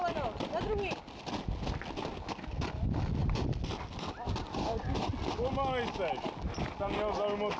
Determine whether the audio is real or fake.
real